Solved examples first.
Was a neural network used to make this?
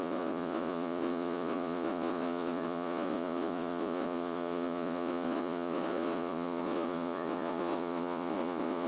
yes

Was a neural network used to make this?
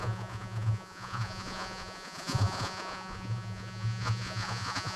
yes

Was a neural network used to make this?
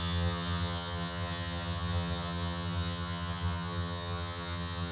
yes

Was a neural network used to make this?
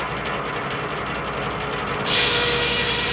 no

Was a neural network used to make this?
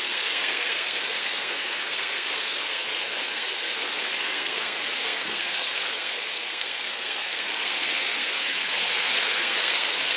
yes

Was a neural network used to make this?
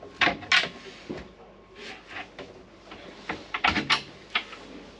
no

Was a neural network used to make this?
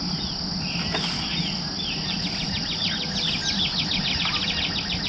no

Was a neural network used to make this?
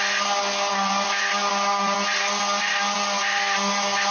no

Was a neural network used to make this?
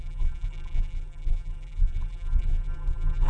yes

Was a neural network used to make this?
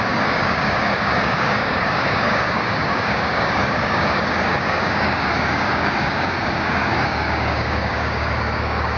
yes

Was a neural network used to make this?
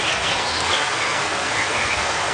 yes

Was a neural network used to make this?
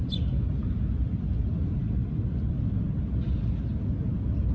no